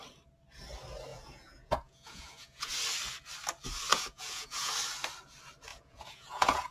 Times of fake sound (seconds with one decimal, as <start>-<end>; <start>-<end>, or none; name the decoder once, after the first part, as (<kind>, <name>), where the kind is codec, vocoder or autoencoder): 1.1-2.7 (vocoder, Vocos); 3.9-4.7; 5.7-6.7